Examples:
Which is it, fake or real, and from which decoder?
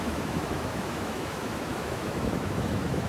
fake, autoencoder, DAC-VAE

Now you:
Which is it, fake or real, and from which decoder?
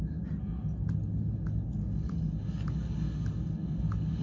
real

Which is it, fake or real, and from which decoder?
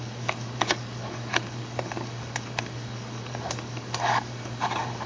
fake, codec, DAC